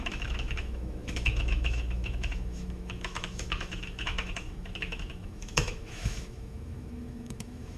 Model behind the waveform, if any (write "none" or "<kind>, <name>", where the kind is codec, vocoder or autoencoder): autoencoder, DAC-VAE